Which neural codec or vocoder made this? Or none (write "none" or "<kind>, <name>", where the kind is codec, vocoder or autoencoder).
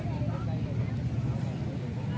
none